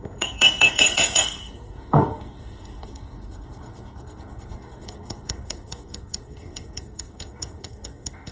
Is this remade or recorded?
remade